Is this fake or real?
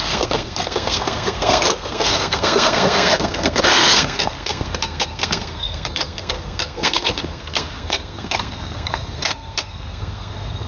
fake